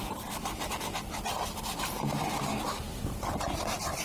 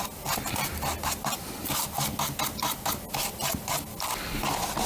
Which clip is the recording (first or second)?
second